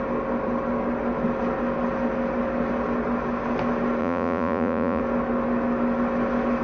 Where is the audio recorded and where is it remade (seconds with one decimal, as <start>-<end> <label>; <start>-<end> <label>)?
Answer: 0.0-4.0 recorded; 4.0-5.0 remade; 5.0-6.6 recorded